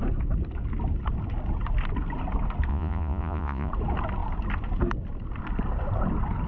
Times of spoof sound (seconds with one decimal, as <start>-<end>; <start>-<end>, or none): 2.7-3.7